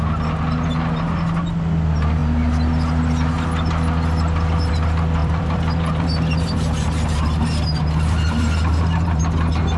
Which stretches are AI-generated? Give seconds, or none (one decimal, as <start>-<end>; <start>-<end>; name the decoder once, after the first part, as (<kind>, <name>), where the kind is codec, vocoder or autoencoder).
5.2-9.2 (vocoder, BigVGAN v2)